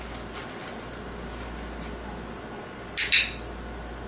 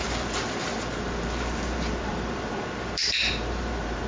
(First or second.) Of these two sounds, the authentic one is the first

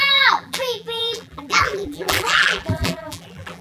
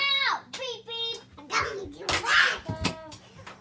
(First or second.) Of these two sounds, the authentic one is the second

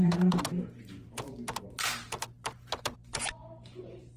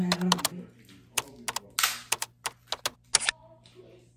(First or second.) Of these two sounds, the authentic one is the second